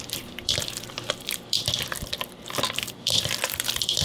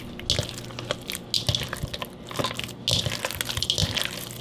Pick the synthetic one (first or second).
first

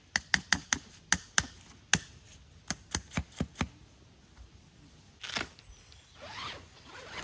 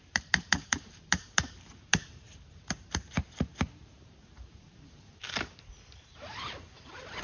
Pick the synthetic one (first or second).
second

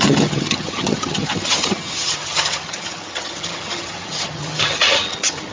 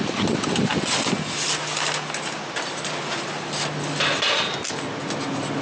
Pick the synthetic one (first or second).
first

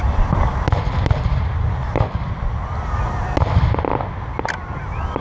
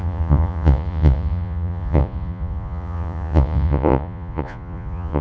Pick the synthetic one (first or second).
second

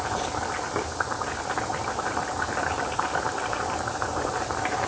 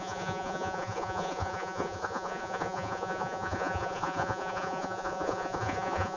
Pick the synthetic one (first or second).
second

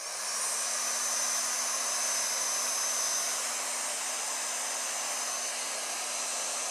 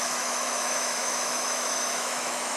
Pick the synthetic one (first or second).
second